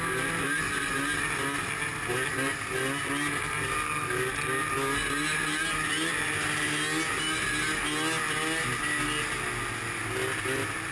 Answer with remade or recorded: recorded